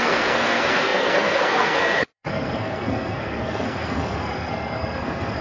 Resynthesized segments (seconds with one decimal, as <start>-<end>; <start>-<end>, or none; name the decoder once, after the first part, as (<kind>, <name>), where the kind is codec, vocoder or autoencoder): 0.0-5.4 (codec, SNAC)